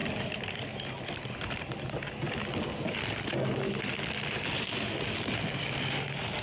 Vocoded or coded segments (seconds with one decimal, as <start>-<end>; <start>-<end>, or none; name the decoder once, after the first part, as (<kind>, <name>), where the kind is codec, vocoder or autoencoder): none